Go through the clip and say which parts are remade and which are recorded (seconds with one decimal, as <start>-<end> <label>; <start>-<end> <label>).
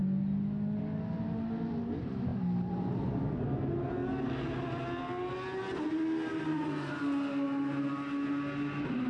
0.0-6.5 recorded; 6.5-7.0 remade; 7.0-9.1 recorded